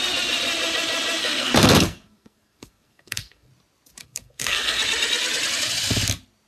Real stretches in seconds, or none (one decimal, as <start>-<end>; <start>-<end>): 0.0-1.2; 3.5-4.0; 4.8-6.5